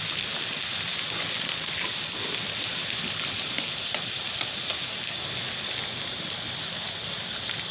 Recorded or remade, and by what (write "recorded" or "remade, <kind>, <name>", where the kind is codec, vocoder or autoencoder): recorded